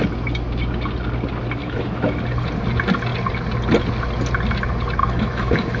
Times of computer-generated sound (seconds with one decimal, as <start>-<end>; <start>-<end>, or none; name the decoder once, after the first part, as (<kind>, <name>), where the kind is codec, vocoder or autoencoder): 1.6-2.2 (autoencoder, DAC-VAE); 5.0-5.8